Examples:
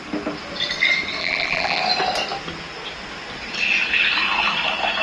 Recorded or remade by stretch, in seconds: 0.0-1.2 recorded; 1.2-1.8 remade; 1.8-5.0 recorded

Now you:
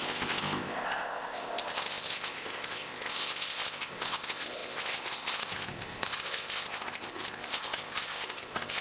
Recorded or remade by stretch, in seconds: 0.0-8.8 remade